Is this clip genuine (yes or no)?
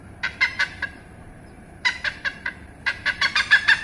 no